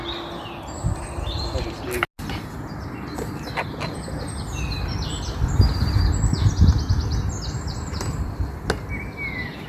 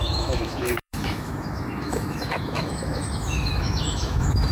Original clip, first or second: first